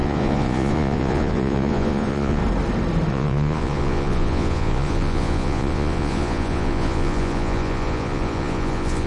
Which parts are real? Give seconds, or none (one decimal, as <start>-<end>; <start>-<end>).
2.4-3.1